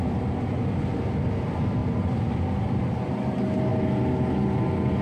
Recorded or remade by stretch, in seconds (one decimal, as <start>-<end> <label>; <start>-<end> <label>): 0.0-1.8 recorded; 1.8-2.8 remade; 2.8-5.0 recorded